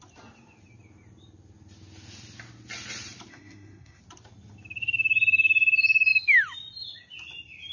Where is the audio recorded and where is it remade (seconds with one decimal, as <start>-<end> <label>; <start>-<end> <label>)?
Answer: 0.0-3.3 recorded; 3.3-4.0 remade; 4.0-7.7 recorded